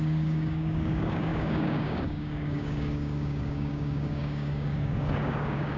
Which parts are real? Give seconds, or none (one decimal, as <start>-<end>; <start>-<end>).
none